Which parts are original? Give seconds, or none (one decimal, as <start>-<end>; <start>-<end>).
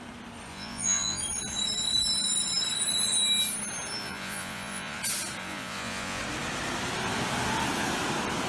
0.0-0.5; 1.2-4.0; 5.0-5.4; 6.2-8.5